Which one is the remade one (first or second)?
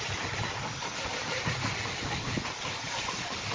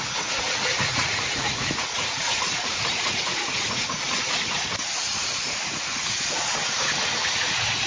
second